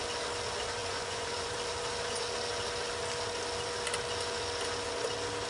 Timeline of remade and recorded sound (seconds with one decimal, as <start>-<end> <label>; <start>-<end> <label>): 0.0-0.8 recorded; 0.8-1.5 remade; 1.5-5.5 recorded